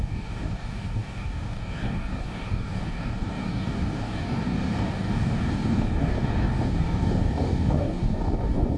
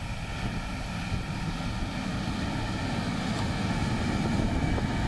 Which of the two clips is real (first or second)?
second